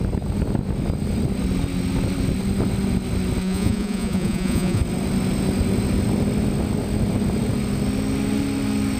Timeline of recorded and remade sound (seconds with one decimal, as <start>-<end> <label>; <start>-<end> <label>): 0.0-3.4 recorded; 3.4-4.8 remade; 4.8-9.0 recorded